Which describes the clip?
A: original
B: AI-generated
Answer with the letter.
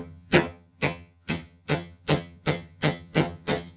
B